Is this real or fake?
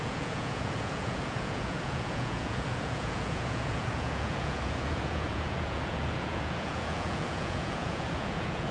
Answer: fake